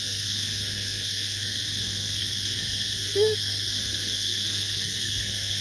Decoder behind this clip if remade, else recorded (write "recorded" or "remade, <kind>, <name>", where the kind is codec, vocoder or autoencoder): remade, codec, SNAC